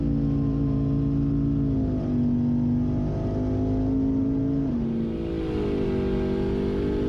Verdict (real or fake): real